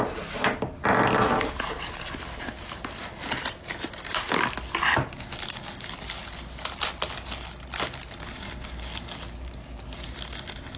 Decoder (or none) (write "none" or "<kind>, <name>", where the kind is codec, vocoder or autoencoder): none